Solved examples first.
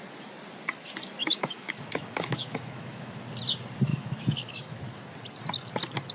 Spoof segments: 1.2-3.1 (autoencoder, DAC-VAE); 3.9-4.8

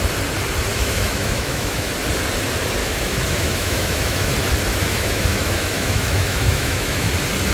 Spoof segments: 0.7-1.9 (autoencoder, DAC-VAE); 2.8-4.3; 4.7-7.1

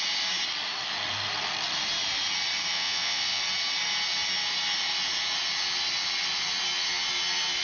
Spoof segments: 2.7-3.4 (vocoder, Vocos)

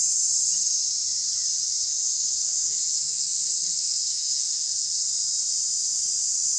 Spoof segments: 1.8-5.1 (codec, SNAC)

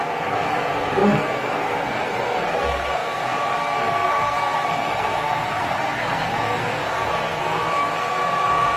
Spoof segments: 0.0-8.8 (codec, SNAC)